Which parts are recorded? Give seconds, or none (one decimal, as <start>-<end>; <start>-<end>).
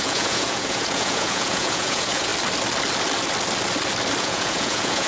2.3-4.2